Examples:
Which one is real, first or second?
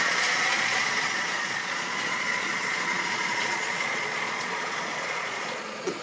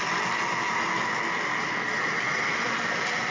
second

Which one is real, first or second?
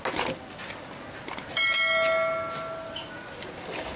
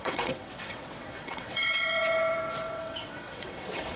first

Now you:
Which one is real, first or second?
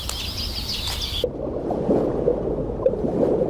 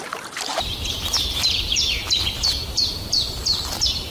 first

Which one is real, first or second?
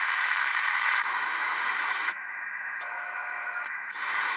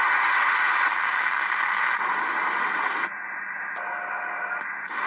second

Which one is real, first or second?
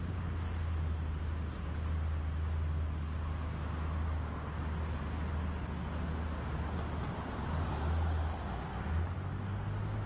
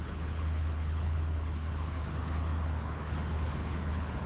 first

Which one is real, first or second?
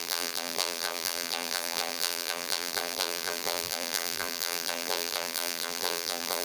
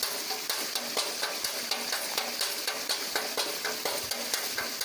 second